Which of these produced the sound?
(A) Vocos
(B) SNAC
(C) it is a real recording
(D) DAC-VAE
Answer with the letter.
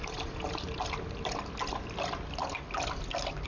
C